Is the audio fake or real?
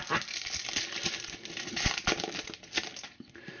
real